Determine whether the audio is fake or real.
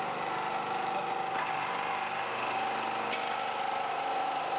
real